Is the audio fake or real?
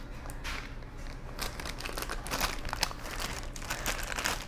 real